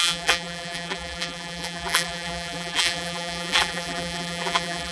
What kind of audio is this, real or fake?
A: fake